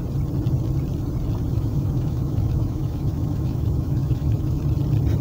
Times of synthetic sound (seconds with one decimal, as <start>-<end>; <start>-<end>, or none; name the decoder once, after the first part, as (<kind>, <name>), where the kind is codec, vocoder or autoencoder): 1.5-4.6 (autoencoder, DAC-VAE)